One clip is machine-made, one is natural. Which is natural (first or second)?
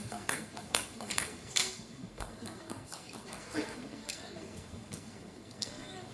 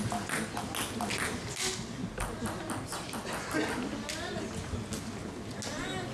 second